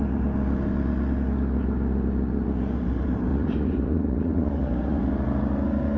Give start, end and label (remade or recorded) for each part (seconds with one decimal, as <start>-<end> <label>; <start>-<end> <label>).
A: 0.0-3.3 recorded; 3.3-5.0 remade; 5.0-6.0 recorded